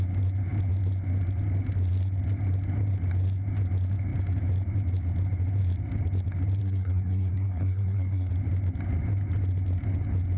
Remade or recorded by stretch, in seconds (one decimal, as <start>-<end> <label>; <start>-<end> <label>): 0.0-6.6 recorded; 6.6-8.3 remade; 8.3-10.4 recorded